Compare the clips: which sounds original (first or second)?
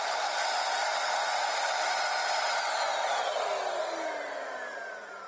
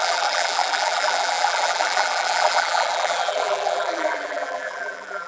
first